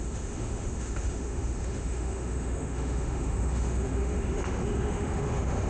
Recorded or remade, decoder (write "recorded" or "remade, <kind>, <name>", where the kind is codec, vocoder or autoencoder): remade, autoencoder, DAC-VAE